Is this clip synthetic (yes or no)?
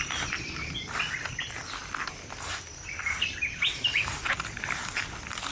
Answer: no